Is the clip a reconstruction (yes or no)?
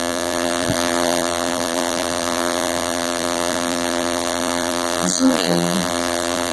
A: yes